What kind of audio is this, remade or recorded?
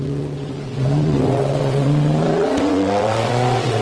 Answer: remade